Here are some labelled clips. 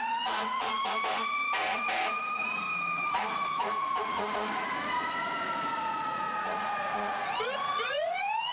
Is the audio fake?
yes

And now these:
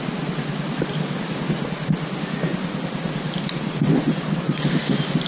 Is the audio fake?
no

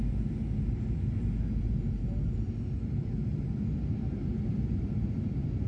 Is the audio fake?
no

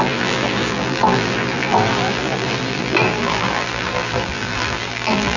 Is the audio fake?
yes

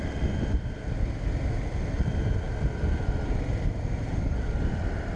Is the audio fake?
no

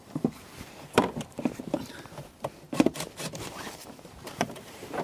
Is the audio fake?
yes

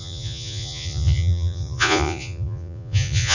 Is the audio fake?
yes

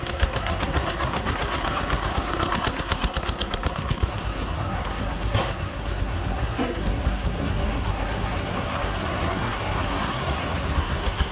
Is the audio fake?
yes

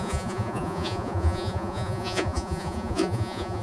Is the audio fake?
yes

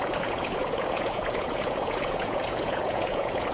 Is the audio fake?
yes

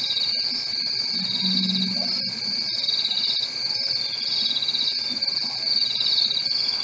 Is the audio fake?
no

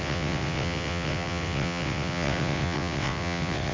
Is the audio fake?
yes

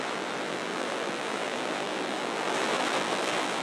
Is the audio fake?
yes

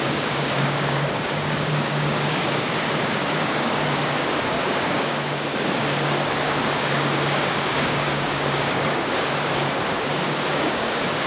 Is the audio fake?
yes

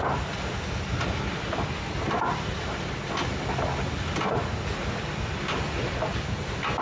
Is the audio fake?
no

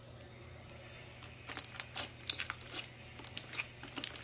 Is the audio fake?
no